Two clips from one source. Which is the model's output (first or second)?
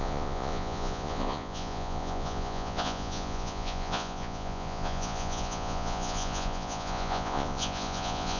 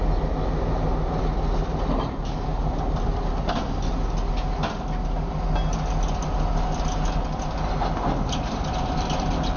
first